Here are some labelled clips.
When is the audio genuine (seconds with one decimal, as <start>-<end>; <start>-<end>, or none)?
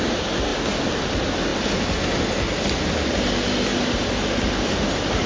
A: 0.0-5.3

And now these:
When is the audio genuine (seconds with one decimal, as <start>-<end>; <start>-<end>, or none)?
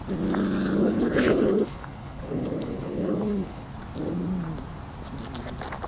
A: 0.0-0.8; 3.7-5.9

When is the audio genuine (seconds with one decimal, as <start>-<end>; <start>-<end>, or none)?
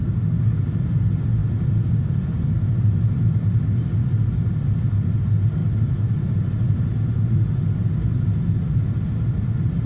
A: 0.0-9.9